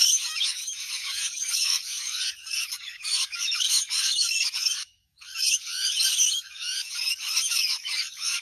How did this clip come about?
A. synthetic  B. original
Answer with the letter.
A